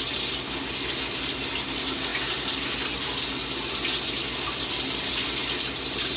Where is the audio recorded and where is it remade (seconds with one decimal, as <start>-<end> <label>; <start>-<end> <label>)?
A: 0.0-6.2 recorded